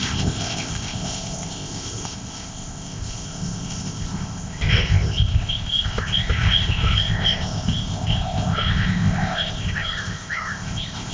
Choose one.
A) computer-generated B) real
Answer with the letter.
A